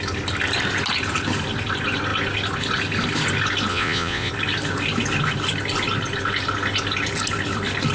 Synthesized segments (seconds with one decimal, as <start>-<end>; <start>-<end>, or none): 3.7-4.3